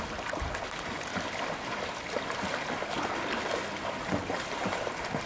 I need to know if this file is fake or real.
real